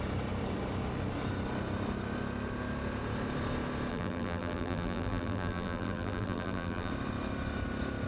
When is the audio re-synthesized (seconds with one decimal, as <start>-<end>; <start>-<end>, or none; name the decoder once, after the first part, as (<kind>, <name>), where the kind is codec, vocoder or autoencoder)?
3.9-6.9 (vocoder, BigVGAN v2)